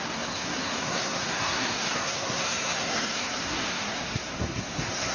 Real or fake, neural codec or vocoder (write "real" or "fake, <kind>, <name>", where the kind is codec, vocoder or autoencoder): fake, codec, SNAC